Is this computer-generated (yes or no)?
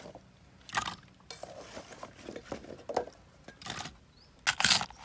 no